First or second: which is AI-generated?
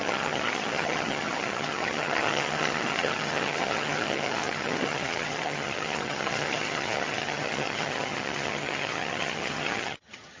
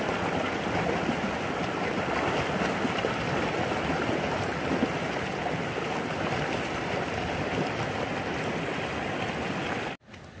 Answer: first